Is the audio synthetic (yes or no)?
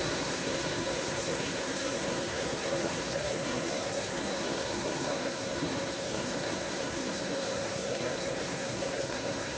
yes